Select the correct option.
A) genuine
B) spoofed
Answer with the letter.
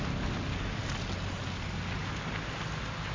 A